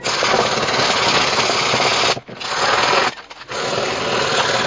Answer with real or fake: real